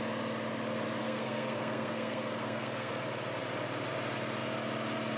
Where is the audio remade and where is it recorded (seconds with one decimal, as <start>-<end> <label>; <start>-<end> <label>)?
0.0-1.0 recorded; 1.0-2.9 remade; 2.9-5.2 recorded